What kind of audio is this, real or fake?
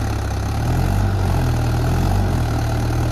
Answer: real